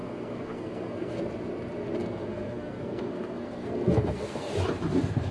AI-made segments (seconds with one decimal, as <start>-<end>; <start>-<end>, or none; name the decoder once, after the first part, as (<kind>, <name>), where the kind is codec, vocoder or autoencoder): 0.0-1.2 (codec, SNAC); 2.0-4.5